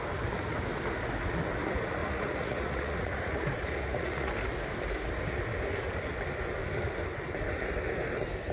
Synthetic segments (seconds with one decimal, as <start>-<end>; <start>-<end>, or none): 2.0-4.3